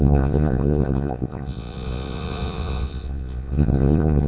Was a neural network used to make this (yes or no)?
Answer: yes